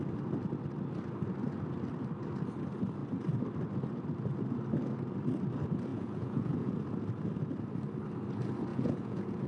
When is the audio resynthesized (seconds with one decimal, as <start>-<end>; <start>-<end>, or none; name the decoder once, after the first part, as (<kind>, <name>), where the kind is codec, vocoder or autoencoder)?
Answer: 5.9-6.8 (vocoder, Vocos); 8.7-9.5